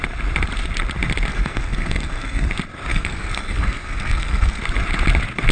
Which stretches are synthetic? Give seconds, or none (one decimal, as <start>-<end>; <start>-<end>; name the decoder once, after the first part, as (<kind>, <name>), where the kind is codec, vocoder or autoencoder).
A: 1.3-2.5 (codec, SNAC); 2.9-4.6